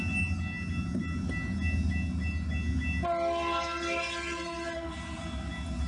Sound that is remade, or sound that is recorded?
recorded